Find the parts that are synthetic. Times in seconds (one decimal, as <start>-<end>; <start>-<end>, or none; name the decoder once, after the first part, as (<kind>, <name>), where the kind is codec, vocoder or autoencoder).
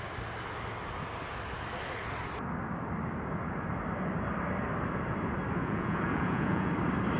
5.6-6.7 (vocoder, Vocos)